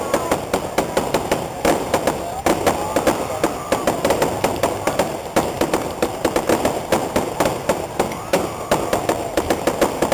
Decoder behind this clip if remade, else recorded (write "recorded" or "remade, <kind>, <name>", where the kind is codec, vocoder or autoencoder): recorded